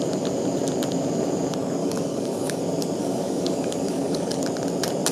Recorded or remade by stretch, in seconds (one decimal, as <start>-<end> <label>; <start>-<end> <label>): 0.0-1.8 recorded; 1.8-2.6 remade; 2.6-3.0 recorded; 3.0-4.4 remade; 4.4-5.1 recorded